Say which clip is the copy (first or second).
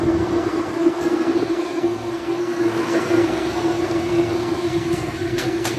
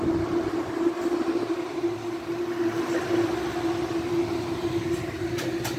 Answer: first